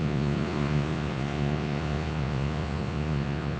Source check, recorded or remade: remade